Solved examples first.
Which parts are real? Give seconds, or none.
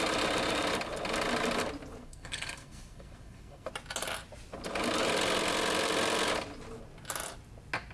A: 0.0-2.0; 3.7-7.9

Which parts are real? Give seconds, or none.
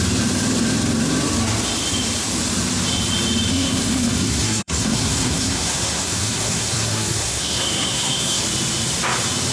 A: 0.0-3.5; 8.4-9.5